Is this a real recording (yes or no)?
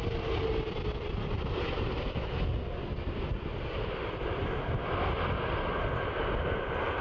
yes